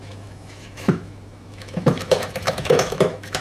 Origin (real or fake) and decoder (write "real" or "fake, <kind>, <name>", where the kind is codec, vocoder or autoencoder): fake, autoencoder, DAC-VAE